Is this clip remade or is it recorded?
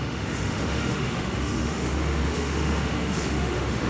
remade